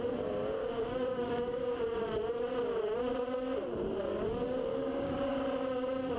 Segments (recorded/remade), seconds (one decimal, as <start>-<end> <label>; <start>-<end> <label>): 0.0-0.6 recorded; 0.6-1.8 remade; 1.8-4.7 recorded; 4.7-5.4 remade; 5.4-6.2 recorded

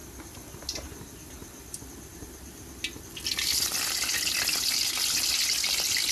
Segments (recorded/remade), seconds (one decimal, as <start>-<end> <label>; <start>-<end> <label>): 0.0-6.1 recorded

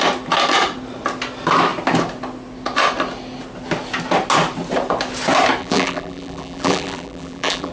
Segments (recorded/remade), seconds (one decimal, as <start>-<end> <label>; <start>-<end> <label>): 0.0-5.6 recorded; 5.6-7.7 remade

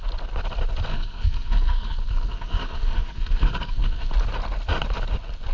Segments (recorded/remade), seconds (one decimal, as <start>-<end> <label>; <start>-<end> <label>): 0.0-0.9 recorded; 0.9-4.1 remade; 4.1-5.5 recorded

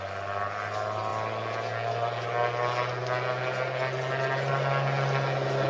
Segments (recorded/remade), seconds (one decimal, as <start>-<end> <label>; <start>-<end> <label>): 0.0-5.7 recorded

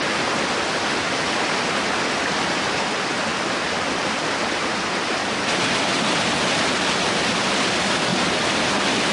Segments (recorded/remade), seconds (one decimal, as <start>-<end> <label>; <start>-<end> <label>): 0.0-9.1 recorded

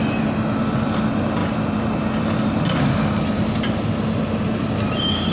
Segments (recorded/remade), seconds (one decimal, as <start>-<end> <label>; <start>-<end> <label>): 0.0-5.3 recorded

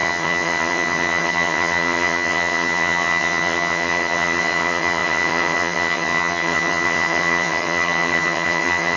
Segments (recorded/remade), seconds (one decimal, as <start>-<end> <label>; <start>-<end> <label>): 0.0-9.0 remade